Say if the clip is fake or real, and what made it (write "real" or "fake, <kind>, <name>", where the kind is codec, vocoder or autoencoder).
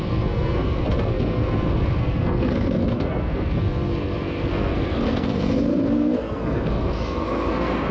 fake, codec, SNAC